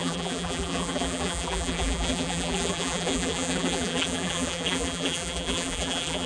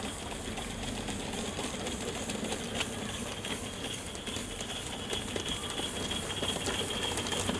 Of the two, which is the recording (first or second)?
second